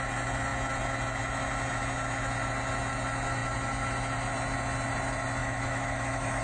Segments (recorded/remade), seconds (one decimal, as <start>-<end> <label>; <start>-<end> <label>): 0.0-5.4 recorded; 5.4-6.4 remade